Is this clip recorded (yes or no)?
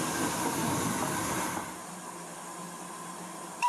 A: yes